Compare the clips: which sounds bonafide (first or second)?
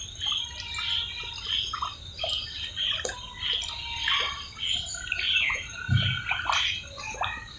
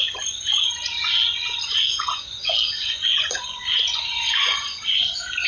first